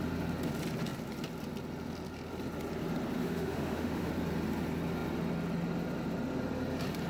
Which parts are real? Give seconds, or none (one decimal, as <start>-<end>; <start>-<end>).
0.0-3.2; 4.1-7.1